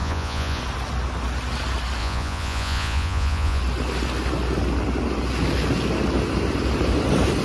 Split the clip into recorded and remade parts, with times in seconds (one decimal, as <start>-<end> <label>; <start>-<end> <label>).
0.0-0.6 remade; 0.6-2.0 recorded; 2.0-3.6 remade; 3.6-7.4 recorded